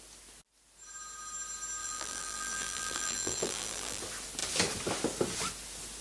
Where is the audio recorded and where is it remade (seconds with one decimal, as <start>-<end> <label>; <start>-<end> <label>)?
0.0-1.8 recorded; 1.8-4.0 remade; 4.0-6.0 recorded